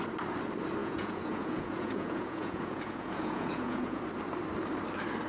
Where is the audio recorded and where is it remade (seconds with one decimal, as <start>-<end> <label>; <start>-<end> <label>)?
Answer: 0.0-0.8 recorded; 0.8-4.0 remade; 4.0-5.3 recorded